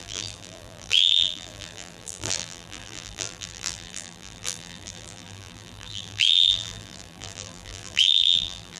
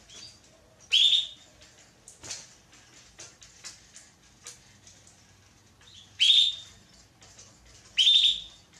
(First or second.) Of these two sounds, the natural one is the second